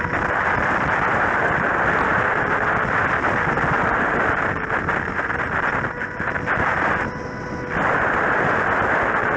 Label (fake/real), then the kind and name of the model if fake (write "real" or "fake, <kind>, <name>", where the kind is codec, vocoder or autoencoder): real